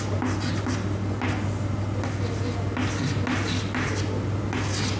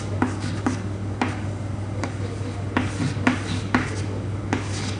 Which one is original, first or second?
first